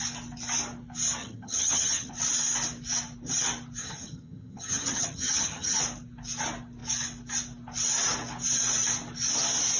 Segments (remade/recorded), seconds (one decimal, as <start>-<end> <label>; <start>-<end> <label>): 0.0-1.2 recorded; 1.2-2.1 remade; 2.1-3.8 recorded; 3.8-5.8 remade; 5.8-9.8 recorded